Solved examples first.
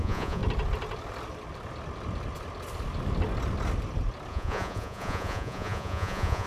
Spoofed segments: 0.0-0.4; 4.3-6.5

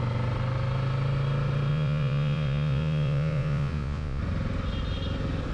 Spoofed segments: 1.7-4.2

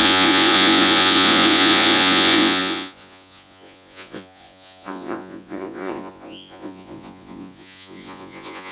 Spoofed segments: 0.0-8.7

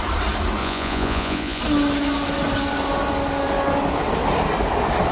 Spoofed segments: 0.6-1.6